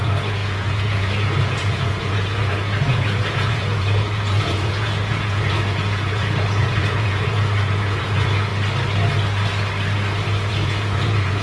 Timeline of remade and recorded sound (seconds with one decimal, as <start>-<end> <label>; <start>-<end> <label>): 0.0-8.5 remade; 8.5-10.5 recorded; 10.5-11.4 remade